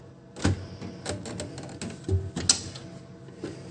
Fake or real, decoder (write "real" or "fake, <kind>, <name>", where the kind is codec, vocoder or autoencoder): real